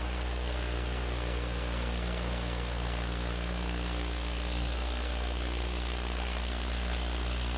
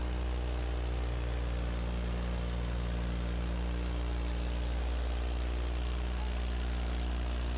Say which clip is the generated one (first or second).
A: first